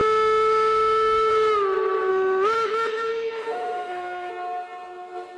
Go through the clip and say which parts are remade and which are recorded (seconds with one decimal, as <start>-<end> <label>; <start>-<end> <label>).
0.0-1.3 remade; 1.3-2.1 recorded; 2.1-4.3 remade; 4.3-5.4 recorded